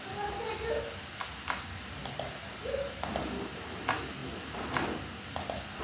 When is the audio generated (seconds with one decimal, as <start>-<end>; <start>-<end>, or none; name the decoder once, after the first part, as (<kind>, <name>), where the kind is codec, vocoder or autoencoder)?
2.0-2.5 (vocoder, BigVGAN v2); 4.2-5.8